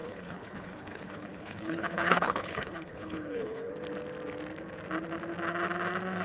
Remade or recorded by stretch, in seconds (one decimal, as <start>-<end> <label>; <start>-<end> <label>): 0.0-3.7 remade; 3.7-6.2 recorded